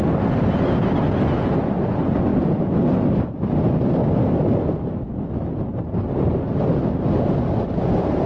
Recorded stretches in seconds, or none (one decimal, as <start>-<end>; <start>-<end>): 0.0-8.3